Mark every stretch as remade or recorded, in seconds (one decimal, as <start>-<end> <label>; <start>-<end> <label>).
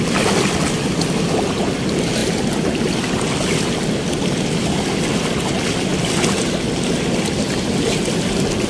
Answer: 0.0-8.7 recorded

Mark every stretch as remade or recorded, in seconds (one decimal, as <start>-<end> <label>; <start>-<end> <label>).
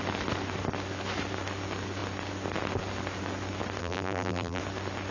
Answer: 0.0-3.8 recorded; 3.8-4.6 remade; 4.6-5.1 recorded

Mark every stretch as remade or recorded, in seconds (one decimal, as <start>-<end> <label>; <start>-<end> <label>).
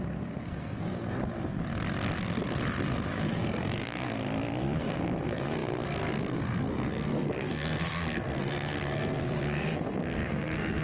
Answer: 0.0-1.2 remade; 1.2-3.3 recorded; 3.3-4.2 remade; 4.2-4.8 recorded; 4.8-10.8 remade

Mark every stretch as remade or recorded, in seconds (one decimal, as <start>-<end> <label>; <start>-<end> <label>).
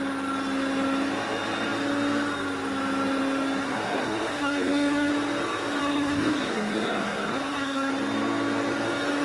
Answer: 0.0-3.6 recorded; 3.6-5.1 remade; 5.1-5.8 recorded; 5.8-7.9 remade; 7.9-9.2 recorded